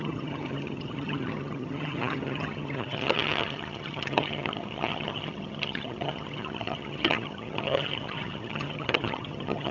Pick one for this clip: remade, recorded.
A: remade